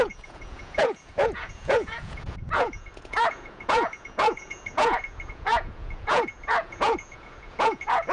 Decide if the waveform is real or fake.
fake